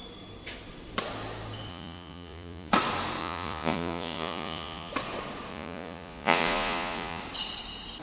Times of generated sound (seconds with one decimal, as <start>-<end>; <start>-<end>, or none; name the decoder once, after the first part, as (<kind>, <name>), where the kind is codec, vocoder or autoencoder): 1.7-2.7 (vocoder, Vocos); 3.2-4.9; 5.5-7.2